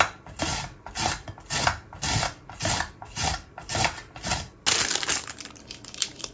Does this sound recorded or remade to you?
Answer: recorded